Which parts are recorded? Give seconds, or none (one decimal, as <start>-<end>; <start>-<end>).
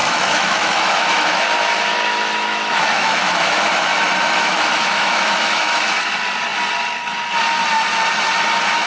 1.4-1.9; 6.0-8.9